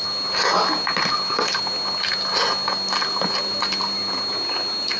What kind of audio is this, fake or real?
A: real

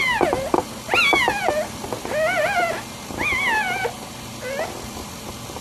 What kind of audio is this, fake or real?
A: real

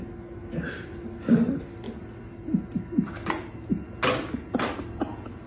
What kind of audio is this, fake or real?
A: real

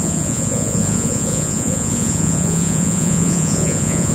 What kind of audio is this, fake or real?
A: fake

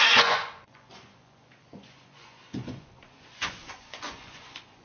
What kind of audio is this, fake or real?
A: fake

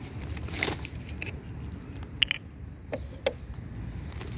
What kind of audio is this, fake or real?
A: real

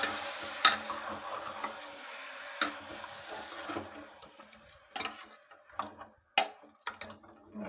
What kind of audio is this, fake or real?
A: real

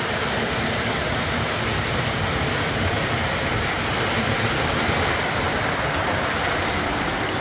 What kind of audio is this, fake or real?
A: fake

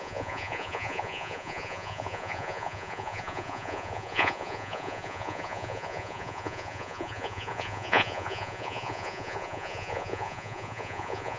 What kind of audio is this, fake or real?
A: fake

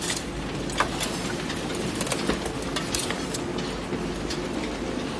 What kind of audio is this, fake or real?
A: real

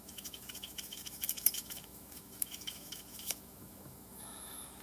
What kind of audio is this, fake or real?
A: fake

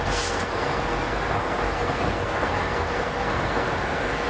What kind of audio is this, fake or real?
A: fake